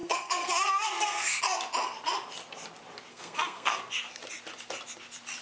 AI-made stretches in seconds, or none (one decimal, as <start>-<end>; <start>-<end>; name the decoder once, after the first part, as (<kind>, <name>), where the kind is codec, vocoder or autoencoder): 0.0-1.4 (codec, SNAC); 3.1-3.8